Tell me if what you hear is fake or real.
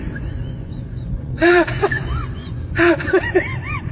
fake